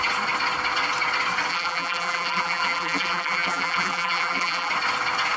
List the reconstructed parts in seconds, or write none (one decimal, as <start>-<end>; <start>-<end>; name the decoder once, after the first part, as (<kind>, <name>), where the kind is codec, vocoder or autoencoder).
1.5-4.7 (vocoder, BigVGAN v2)